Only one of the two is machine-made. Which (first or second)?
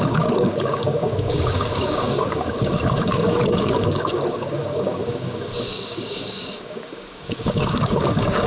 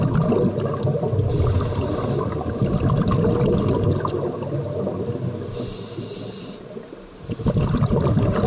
first